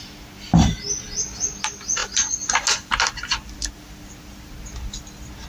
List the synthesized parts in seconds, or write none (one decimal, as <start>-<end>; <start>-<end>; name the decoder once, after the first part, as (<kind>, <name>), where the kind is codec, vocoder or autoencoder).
none